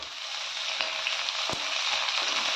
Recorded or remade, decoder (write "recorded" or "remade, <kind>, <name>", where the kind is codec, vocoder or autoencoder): recorded